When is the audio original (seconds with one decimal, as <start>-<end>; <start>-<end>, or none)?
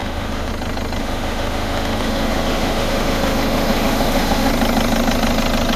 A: 0.5-1.0; 4.5-5.8